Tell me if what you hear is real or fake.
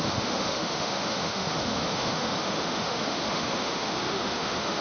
fake